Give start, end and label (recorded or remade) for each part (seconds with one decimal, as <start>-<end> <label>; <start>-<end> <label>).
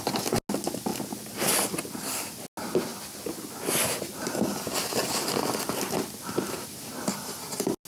0.0-7.9 recorded